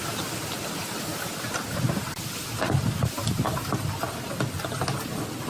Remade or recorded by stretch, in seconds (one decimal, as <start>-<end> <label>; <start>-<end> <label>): 0.0-5.5 recorded